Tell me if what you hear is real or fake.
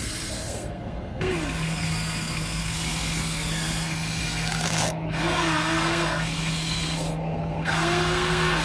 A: fake